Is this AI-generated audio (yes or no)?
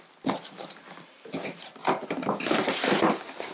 no